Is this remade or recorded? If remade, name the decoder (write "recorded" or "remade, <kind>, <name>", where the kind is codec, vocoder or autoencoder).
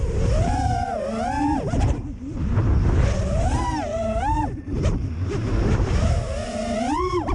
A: remade, vocoder, BigVGAN v2